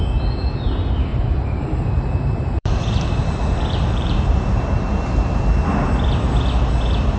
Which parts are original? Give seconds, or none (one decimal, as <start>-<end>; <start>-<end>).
0.0-1.1; 5.4-7.2